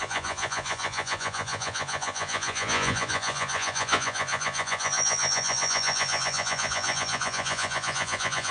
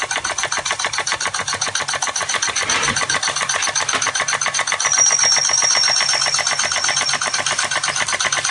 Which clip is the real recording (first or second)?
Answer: second